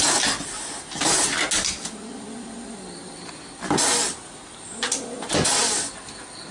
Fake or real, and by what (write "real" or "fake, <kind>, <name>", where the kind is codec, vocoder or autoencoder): real